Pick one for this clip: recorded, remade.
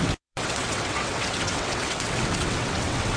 remade